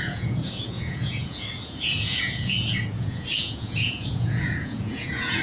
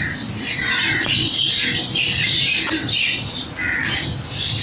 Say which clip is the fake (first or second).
first